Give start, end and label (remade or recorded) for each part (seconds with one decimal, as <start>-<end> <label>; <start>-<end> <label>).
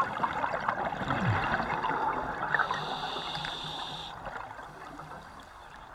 0.0-3.4 recorded; 3.4-4.3 remade; 4.3-5.9 recorded